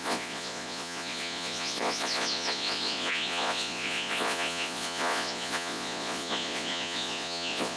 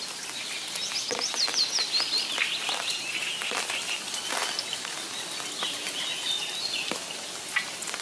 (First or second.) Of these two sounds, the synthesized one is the first